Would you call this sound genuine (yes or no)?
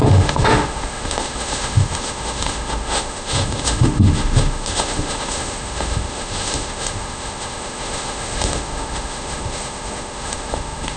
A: no